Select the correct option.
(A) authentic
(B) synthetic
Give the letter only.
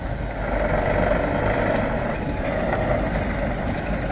A